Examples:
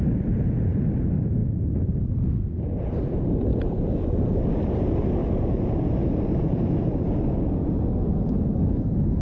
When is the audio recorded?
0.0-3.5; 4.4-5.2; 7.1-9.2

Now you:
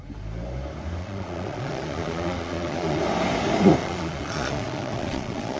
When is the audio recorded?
0.0-1.0; 3.0-3.8

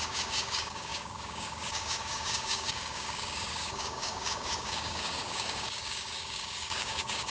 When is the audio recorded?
none

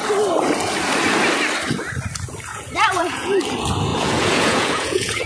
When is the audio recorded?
0.0-2.5; 3.4-3.9

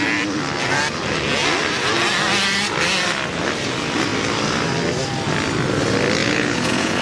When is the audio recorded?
0.0-6.2

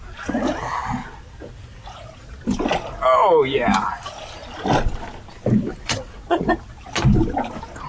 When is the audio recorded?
0.0-5.7; 6.5-7.9

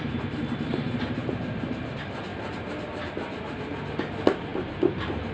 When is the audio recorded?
0.0-0.7; 1.9-2.3; 3.1-5.3

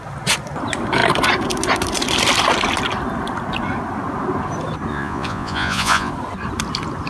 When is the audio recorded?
0.0-4.9; 6.1-7.1